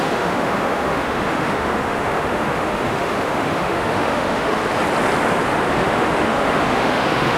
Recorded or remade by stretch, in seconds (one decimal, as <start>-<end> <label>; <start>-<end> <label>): 0.0-4.6 remade; 4.6-5.7 recorded; 5.7-7.4 remade